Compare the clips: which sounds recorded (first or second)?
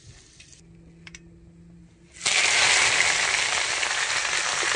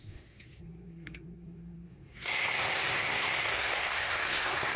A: first